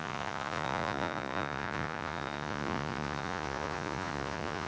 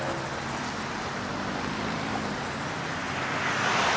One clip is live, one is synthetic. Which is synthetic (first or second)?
first